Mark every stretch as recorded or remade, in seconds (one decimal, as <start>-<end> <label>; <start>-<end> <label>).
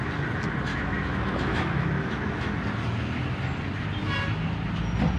0.0-0.7 recorded; 0.7-2.5 remade; 2.5-5.2 recorded